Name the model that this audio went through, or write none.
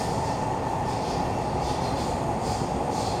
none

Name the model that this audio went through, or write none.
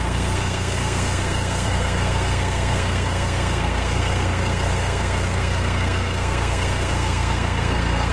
codec, SNAC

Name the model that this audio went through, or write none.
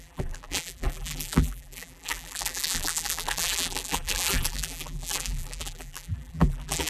vocoder, BigVGAN v2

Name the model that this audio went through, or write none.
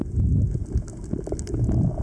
none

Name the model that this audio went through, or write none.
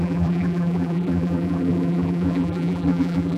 vocoder, BigVGAN v2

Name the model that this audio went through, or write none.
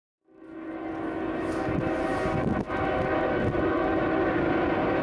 none